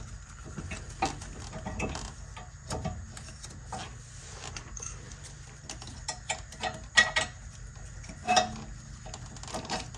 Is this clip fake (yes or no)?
no